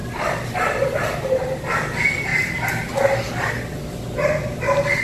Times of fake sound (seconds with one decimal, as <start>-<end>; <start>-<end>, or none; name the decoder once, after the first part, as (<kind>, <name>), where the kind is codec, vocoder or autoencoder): 0.0-1.2 (vocoder, BigVGAN v2); 2.3-3.5